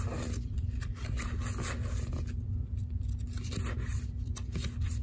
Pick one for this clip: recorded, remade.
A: recorded